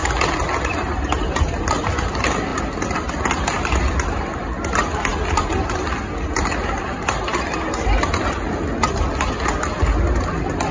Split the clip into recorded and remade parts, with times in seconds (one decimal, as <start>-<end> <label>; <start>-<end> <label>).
0.0-10.7 recorded